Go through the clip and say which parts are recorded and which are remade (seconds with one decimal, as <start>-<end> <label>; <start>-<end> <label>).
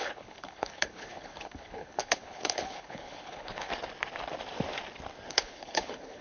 0.0-3.7 remade; 3.7-5.3 recorded; 5.3-6.2 remade